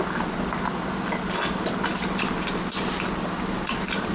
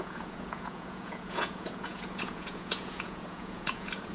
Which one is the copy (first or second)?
second